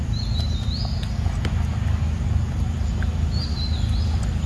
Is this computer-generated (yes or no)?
no